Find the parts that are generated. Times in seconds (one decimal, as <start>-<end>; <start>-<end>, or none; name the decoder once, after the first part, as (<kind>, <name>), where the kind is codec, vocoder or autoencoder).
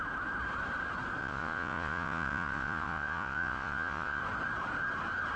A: 1.2-4.2 (vocoder, Vocos)